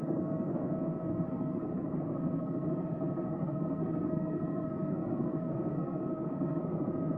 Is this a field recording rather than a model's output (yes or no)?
no